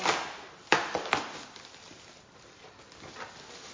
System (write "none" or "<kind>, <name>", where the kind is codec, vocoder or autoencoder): none